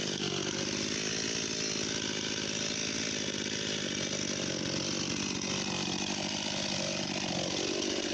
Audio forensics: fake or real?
real